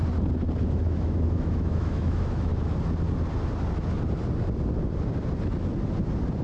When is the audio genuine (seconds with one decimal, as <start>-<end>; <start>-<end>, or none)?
0.0-0.6; 2.5-6.4